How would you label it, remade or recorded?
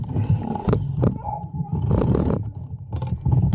remade